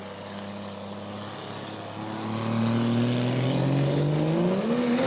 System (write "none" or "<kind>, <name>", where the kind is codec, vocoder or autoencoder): none